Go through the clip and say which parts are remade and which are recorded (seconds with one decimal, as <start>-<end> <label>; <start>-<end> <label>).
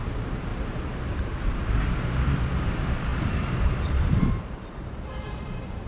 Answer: 0.0-5.9 remade